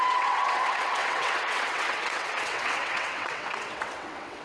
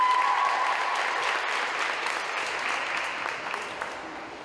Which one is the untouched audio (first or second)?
second